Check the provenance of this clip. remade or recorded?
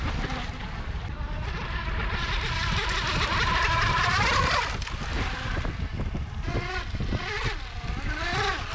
recorded